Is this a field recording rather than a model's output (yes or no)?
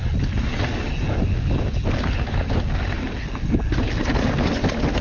yes